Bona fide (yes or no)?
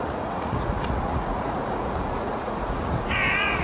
no